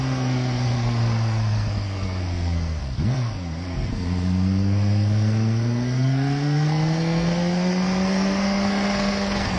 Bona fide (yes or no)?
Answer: no